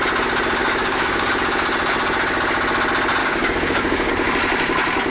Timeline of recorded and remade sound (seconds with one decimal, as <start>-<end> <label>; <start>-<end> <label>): 0.0-0.6 recorded; 0.6-1.3 remade; 1.3-3.2 recorded; 3.2-4.1 remade; 4.1-5.1 recorded